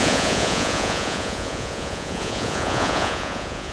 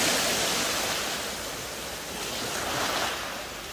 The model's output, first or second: first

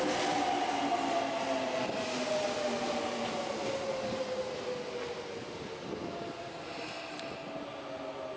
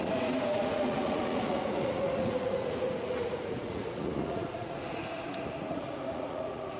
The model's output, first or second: second